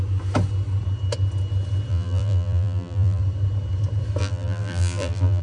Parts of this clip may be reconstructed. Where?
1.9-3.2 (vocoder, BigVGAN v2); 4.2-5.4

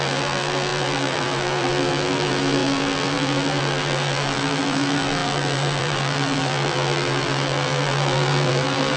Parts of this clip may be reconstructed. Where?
0.0-9.0 (vocoder, BigVGAN v2)